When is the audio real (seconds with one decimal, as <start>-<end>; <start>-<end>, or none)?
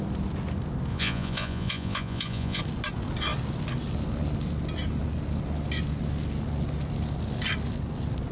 0.0-0.9; 2.6-8.3